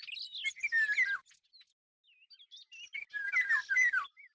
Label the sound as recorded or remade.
recorded